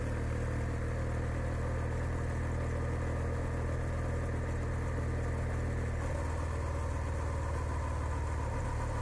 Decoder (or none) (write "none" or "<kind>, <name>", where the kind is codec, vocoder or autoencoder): none